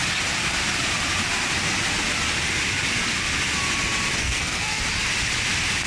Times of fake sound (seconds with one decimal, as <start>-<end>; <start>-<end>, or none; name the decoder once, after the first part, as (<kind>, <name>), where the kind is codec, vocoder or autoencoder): 4.2-4.8 (codec, SNAC)